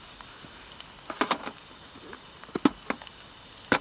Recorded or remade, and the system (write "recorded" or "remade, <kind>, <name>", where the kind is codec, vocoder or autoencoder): recorded